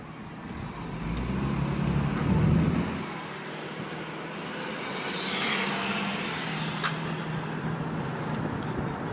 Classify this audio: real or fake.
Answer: real